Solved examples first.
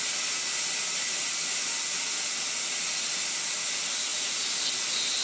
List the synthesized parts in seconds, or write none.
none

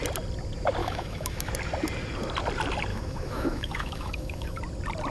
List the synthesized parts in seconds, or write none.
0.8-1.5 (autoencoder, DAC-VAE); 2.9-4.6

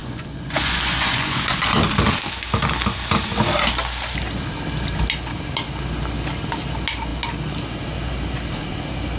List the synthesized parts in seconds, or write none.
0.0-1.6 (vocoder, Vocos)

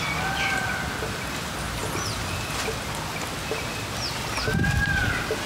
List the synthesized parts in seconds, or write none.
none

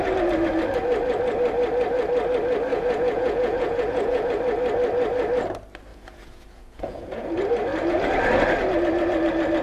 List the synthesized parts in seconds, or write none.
2.7-4.3 (vocoder, Vocos); 5.9-7.3

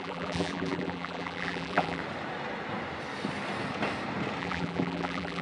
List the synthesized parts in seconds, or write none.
0.0-2.0 (vocoder, BigVGAN v2); 4.4-5.4

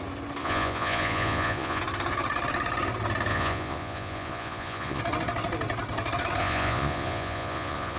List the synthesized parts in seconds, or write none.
0.4-1.8 (vocoder, Vocos); 3.3-5.0; 6.4-8.0